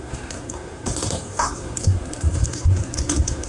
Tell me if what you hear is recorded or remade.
remade